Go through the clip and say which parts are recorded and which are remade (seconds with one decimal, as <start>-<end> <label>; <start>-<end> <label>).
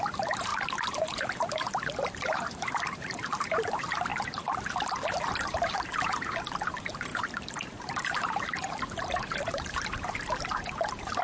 0.0-0.5 remade; 0.5-1.2 recorded; 1.2-4.1 remade; 4.1-5.1 recorded; 5.1-11.2 remade